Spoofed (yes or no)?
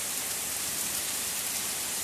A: yes